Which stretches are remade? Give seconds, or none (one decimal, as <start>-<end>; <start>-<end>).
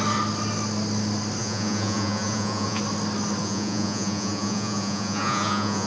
1.4-2.8; 3.4-5.9